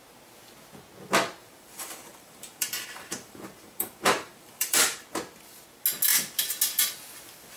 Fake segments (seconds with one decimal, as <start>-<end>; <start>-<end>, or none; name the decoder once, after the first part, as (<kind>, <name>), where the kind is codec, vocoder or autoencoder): 1.4-5.0 (vocoder, BigVGAN v2)